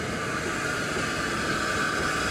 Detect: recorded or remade recorded